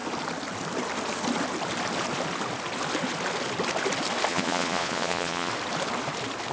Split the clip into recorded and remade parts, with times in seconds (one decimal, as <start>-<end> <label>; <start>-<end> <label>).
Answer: 0.0-4.3 recorded; 4.3-5.5 remade; 5.5-6.5 recorded

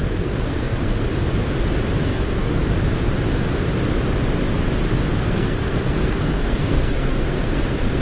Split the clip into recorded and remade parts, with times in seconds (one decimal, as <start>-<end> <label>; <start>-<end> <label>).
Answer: 0.0-1.1 remade; 1.1-2.0 recorded; 2.0-2.6 remade; 2.6-5.2 recorded; 5.2-8.0 remade

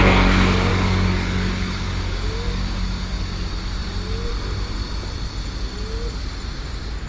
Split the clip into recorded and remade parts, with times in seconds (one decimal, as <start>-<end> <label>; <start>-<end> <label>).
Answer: 0.0-0.7 recorded; 0.7-3.2 remade; 3.2-7.1 recorded

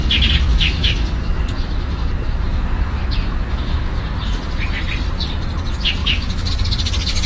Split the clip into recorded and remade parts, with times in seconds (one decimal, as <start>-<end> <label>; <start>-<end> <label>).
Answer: 0.0-0.5 recorded; 0.5-4.0 remade; 4.0-6.0 recorded; 6.0-6.5 remade; 6.5-7.3 recorded